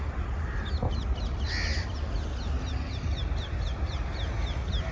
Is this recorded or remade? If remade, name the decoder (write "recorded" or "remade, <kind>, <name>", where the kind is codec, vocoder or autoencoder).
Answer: recorded